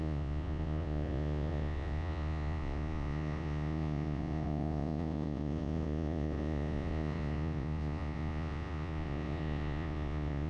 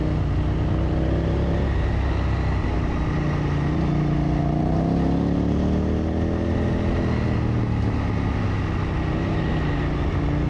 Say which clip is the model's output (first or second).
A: first